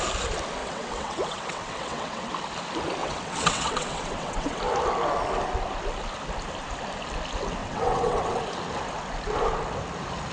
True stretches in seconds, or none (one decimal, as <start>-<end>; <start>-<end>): 0.0-0.6; 2.3-3.0; 4.6-7.6; 8.4-10.3